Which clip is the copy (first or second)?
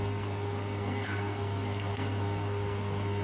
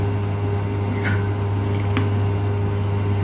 first